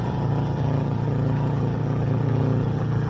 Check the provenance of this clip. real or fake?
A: fake